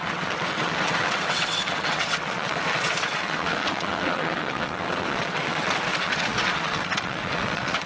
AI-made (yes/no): yes